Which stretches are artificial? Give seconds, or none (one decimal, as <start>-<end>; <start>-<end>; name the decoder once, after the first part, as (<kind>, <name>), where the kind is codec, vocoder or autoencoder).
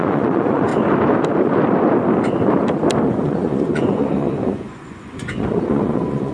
0.0-0.7 (vocoder, Vocos); 3.1-6.3